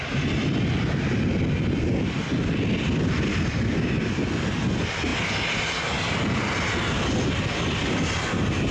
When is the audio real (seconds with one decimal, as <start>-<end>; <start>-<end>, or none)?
0.0-8.7